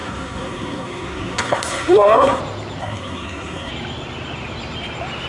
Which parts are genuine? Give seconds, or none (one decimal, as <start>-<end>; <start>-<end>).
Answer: 2.4-2.8; 3.7-5.3